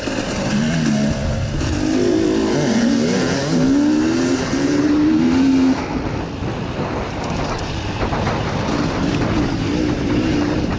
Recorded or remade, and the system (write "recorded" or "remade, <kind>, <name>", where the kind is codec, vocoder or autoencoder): recorded